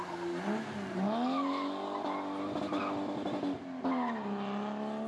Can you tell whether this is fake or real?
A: real